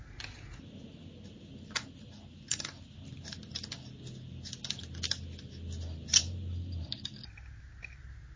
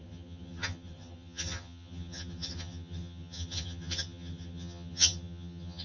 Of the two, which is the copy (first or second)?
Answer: second